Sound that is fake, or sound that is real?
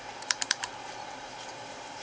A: fake